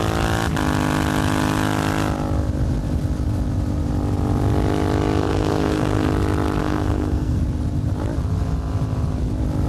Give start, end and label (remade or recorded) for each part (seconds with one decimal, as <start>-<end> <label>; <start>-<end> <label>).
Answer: 0.0-5.2 recorded; 5.2-6.1 remade; 6.1-6.6 recorded; 6.6-7.4 remade; 7.4-9.7 recorded